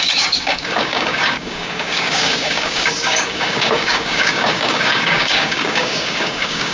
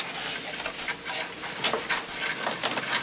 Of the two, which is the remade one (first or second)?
first